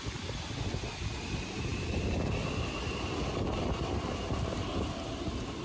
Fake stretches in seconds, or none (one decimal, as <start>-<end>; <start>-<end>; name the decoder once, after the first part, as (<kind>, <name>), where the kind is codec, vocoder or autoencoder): none